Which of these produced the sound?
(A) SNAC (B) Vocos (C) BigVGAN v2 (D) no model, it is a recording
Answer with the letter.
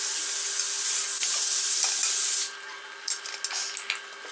D